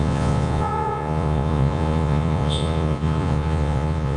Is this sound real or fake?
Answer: fake